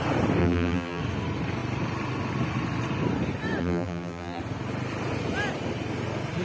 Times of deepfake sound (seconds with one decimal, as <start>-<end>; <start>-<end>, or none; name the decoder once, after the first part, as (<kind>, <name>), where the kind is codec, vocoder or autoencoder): 0.4-1.0 (vocoder, BigVGAN v2); 3.6-4.4